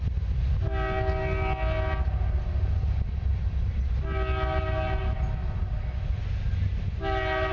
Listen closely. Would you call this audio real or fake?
real